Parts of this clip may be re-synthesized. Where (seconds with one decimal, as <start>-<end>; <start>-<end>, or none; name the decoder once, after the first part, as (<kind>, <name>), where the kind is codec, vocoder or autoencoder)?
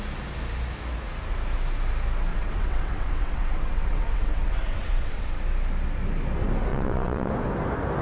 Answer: 2.3-5.4 (vocoder, WaveNeXt); 6.7-7.3